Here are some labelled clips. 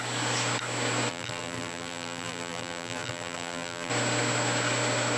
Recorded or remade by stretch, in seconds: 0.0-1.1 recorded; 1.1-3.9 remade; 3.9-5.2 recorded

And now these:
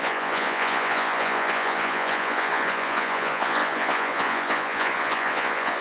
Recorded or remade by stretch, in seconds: 0.0-5.8 remade

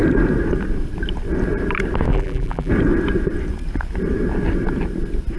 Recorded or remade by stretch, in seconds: 0.0-2.1 recorded; 2.1-2.7 remade; 2.7-5.4 recorded

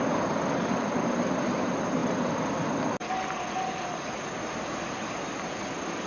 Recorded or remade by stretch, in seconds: 0.0-6.1 recorded

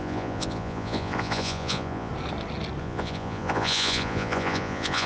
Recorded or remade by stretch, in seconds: 0.0-2.1 remade; 2.1-2.8 recorded; 2.8-5.1 remade

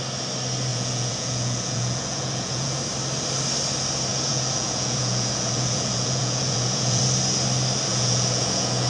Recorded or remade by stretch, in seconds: 0.0-0.7 recorded; 0.7-2.8 remade; 2.8-4.1 recorded; 4.1-7.0 remade; 7.0-7.9 recorded; 7.9-8.9 remade